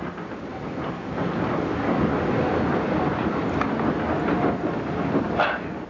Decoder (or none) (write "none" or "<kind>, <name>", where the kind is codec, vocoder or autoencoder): none